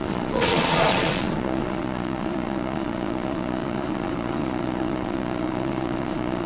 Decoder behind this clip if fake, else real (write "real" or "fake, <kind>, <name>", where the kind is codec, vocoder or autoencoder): fake, vocoder, Vocos